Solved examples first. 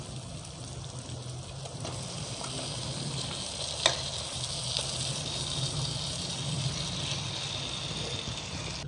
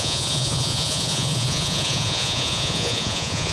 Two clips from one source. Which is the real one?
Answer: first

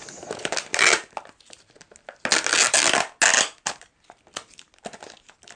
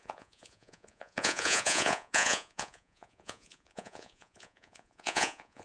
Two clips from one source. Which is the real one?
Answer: first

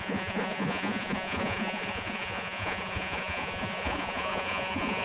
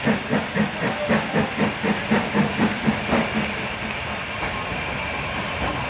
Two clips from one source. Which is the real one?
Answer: second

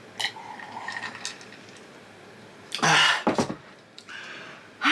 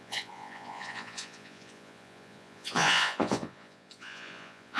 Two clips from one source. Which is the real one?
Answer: first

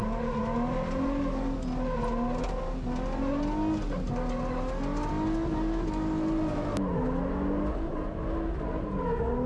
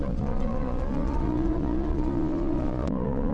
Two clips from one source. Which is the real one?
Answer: first